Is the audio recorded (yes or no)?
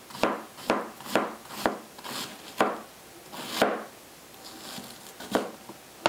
yes